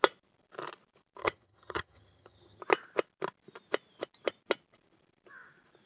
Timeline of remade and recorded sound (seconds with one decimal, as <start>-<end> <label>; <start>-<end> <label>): 0.0-1.2 recorded; 1.2-2.6 remade; 2.6-5.9 recorded